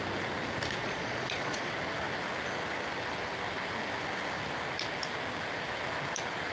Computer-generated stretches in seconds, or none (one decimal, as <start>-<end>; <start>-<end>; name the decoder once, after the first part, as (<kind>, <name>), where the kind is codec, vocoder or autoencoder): 0.8-1.7 (vocoder, Vocos)